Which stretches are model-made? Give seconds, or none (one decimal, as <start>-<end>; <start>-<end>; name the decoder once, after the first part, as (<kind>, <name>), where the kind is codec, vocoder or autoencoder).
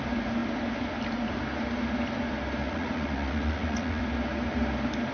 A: 2.6-4.0 (vocoder, Vocos)